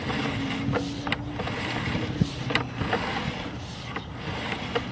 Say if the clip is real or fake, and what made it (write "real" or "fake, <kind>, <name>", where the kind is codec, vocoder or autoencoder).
real